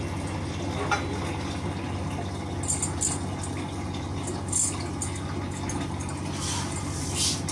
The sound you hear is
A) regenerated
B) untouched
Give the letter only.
B